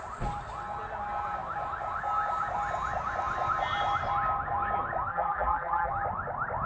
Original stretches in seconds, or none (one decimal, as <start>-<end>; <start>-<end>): 0.0-5.1; 5.9-6.7